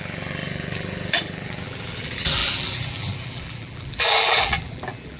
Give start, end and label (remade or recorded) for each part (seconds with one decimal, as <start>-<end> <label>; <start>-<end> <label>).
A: 0.0-5.2 remade